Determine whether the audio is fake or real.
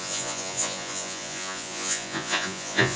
fake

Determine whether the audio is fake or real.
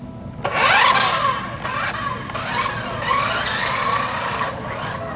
real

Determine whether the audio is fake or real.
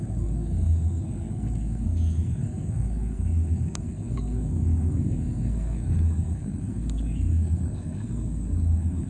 fake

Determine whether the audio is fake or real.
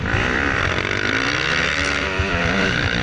fake